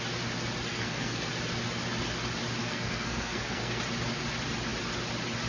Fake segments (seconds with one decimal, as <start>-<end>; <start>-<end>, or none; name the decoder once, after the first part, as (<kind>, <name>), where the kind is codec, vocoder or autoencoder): 0.7-1.3 (codec, SNAC); 2.6-3.8